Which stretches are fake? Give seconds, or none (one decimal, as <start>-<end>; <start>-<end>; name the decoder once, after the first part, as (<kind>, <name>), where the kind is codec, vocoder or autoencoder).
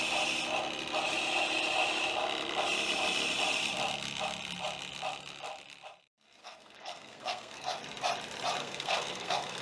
6.4-7.8 (codec, SNAC); 8.6-9.6